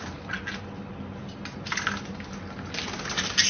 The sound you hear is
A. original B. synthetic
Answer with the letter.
A